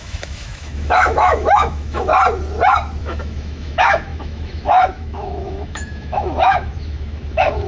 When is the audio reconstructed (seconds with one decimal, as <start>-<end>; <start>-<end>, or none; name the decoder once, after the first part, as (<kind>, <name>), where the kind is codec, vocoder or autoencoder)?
0.0-2.1 (autoencoder, DAC-VAE); 3.0-7.7